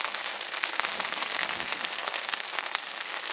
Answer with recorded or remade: remade